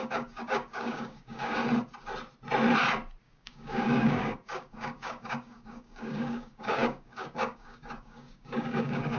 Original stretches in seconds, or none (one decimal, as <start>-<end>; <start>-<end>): 1.6-3.2